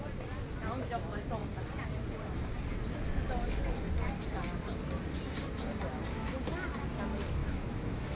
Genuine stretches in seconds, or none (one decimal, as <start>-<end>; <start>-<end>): 0.0-7.4